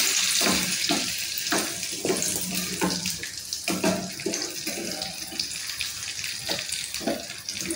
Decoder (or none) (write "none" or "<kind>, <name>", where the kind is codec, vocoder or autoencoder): none